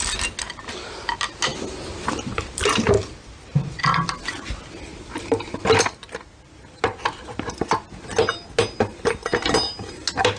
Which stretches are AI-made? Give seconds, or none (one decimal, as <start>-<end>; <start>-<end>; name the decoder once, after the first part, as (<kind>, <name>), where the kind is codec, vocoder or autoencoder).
1.5-3.8 (vocoder, BigVGAN v2); 4.2-8.4; 8.9-9.9